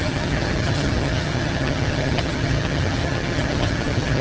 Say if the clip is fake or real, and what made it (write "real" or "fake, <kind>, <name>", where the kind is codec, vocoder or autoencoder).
fake, vocoder, HiFi-GAN